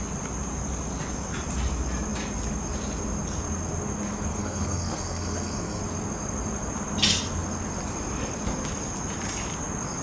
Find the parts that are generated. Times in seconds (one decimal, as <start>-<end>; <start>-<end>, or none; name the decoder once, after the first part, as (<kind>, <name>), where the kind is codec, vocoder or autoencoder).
4.3-5.8 (codec, SNAC)